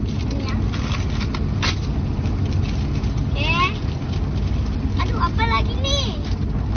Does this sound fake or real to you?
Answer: real